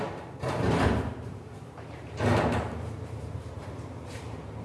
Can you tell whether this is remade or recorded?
remade